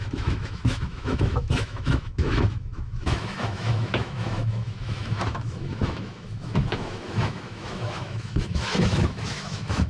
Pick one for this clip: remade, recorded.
remade